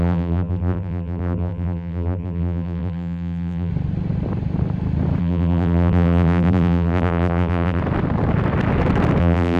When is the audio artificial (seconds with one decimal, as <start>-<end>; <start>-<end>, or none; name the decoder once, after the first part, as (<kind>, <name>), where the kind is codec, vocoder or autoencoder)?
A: 0.0-3.7 (vocoder, BigVGAN v2); 5.2-7.8; 9.2-9.6